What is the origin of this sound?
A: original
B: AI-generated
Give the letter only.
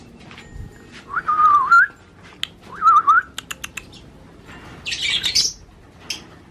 A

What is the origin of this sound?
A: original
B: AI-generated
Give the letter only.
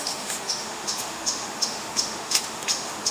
B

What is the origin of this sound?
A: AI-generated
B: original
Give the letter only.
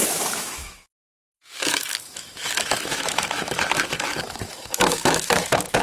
A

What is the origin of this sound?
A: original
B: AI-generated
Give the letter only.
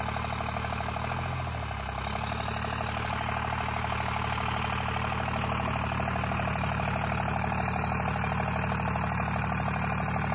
A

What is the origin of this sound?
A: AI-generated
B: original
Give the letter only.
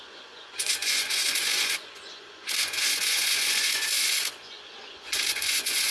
A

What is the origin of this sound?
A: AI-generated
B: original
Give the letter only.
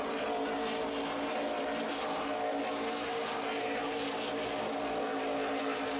B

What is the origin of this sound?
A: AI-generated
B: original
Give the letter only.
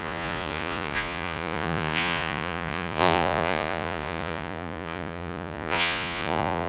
A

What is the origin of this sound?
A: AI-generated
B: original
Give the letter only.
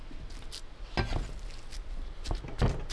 B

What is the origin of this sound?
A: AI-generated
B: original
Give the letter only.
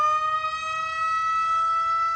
B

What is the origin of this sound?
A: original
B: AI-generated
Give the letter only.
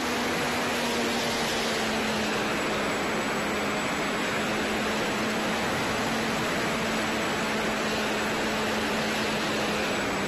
A